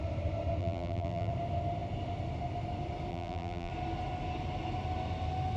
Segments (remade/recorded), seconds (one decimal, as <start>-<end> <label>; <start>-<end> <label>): 0.0-0.6 recorded; 0.6-1.3 remade; 1.3-3.1 recorded; 3.1-3.7 remade; 3.7-5.6 recorded

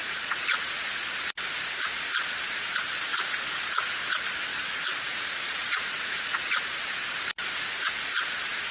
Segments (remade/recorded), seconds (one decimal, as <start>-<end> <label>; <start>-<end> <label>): 0.0-1.8 remade; 1.8-3.1 recorded; 3.1-4.1 remade; 4.1-4.5 recorded; 4.5-7.0 remade; 7.0-7.4 recorded; 7.4-8.1 remade; 8.1-8.7 recorded